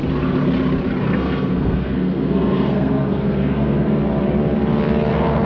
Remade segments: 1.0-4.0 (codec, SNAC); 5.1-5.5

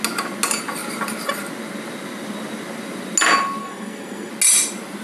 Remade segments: 3.6-4.3 (codec, SNAC)

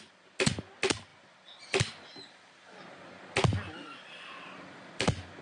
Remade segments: none

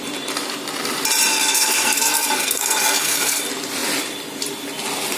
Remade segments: 1.3-3.4 (codec, SNAC)

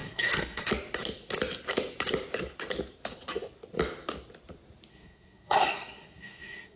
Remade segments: 0.0-0.7 (codec, SNAC); 4.9-6.8

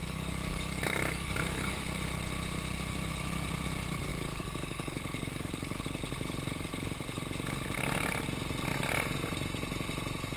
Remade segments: 0.0-1.8 (codec, DAC); 4.1-5.8